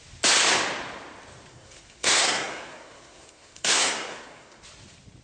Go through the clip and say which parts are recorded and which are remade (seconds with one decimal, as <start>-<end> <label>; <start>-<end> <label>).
0.0-1.5 recorded; 1.5-4.6 remade; 4.6-5.2 recorded